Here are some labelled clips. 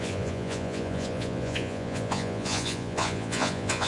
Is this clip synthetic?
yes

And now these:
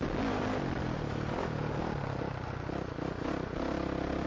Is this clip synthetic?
no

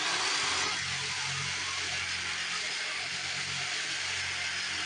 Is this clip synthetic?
no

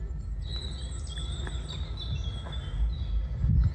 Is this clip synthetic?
no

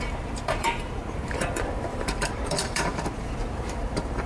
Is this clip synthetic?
yes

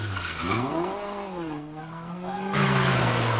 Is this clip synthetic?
yes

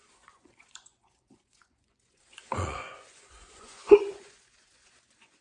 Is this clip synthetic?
yes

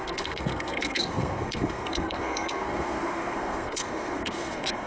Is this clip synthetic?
yes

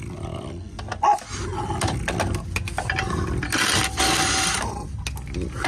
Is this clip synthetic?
no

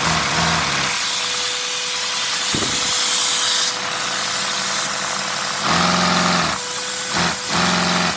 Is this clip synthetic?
no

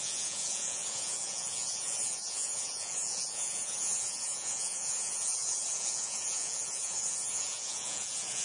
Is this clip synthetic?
yes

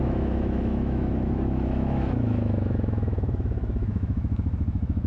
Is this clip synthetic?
yes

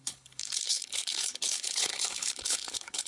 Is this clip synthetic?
yes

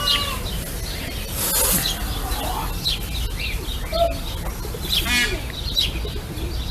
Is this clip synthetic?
no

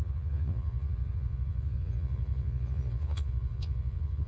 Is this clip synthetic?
yes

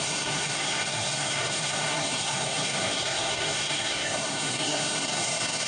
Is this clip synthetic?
yes